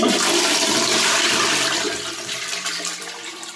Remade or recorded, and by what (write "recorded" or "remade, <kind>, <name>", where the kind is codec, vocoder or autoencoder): remade, vocoder, BigVGAN v2